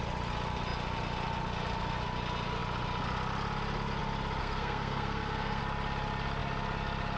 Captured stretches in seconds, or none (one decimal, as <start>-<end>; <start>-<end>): 0.0-4.4; 5.6-7.2